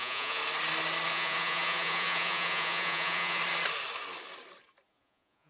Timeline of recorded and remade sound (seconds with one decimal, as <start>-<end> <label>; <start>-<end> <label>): 0.0-0.4 remade; 0.4-1.1 recorded; 1.1-3.4 remade; 3.4-4.9 recorded; 4.9-5.5 remade